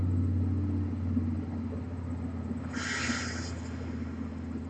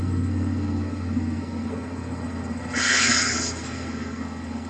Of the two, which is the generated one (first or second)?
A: second